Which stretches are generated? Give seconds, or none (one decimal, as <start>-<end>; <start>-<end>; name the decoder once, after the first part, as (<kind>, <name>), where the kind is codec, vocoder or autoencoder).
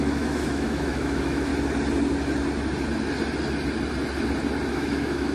0.0-1.5 (autoencoder, DAC-VAE); 4.7-5.3